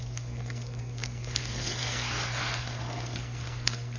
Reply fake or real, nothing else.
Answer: fake